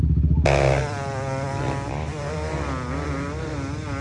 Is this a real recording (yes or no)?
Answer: yes